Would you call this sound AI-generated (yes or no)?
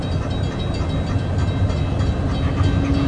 no